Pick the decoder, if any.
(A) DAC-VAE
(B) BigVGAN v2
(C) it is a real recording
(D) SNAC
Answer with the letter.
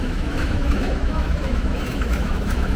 A